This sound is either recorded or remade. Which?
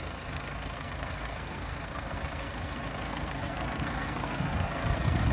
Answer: remade